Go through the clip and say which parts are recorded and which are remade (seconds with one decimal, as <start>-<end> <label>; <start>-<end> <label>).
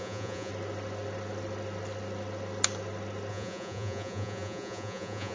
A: 0.0-0.5 remade; 0.5-3.3 recorded; 3.3-5.3 remade